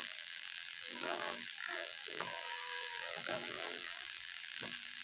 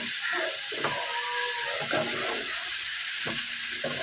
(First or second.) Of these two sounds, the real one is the second